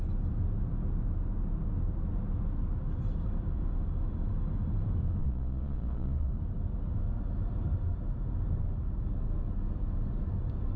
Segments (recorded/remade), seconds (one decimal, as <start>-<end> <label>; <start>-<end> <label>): 0.0-5.2 recorded; 5.2-6.3 remade; 6.3-10.8 recorded